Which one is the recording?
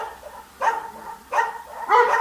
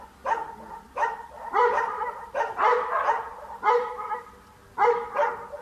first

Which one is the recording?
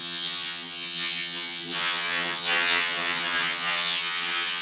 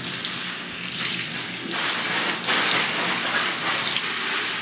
second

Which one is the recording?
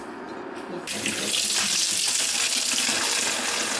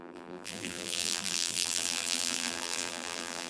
first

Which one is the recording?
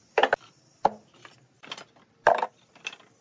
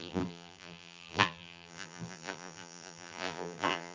first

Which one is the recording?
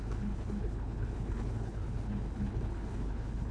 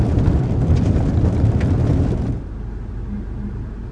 second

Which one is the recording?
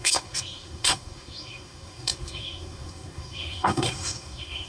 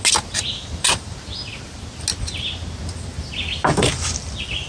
second